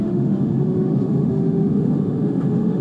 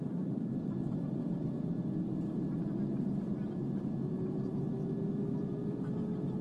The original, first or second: second